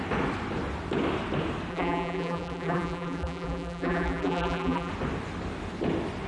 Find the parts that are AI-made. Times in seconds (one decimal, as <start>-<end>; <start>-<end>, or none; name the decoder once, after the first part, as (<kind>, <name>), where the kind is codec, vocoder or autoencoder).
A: 1.7-4.9 (vocoder, BigVGAN v2)